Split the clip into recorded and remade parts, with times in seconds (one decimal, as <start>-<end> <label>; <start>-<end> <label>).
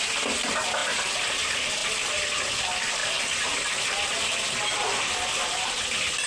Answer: 0.0-6.3 recorded